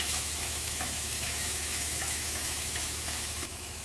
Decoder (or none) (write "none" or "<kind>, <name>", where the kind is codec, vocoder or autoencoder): autoencoder, DAC-VAE